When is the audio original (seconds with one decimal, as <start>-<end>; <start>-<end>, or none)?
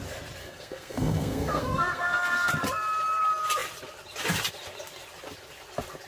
0.0-0.4; 2.5-6.1